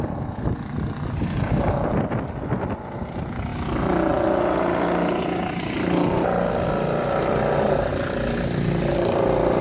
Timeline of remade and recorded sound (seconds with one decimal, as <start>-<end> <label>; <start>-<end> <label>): 0.0-9.6 recorded